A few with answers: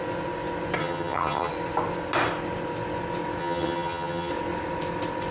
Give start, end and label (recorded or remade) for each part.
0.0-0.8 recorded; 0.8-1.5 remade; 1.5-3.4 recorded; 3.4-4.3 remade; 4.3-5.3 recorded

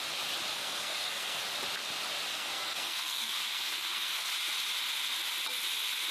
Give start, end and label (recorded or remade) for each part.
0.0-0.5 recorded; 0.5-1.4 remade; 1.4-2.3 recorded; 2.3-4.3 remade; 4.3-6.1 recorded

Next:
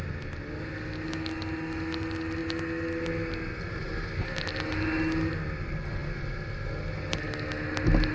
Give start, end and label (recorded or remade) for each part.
0.0-8.1 recorded

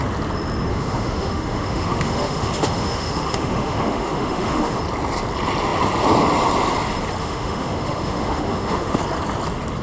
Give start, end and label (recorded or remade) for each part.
0.0-0.7 recorded; 0.7-4.8 remade; 4.8-7.2 recorded; 7.2-9.0 remade; 9.0-9.8 recorded

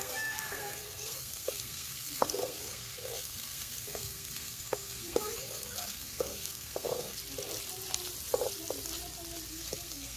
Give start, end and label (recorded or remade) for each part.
0.0-7.2 remade; 7.2-9.5 recorded; 9.5-10.2 remade

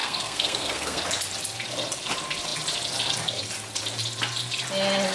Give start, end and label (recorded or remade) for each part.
0.0-1.0 remade; 1.0-5.1 recorded

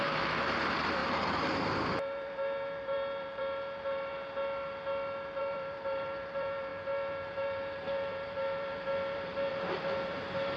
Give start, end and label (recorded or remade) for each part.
0.0-4.1 remade; 4.1-5.4 recorded; 5.4-10.6 remade

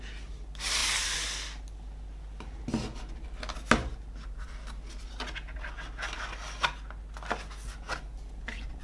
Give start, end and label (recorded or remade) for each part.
0.0-8.8 recorded